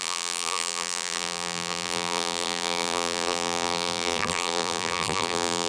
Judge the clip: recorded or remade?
remade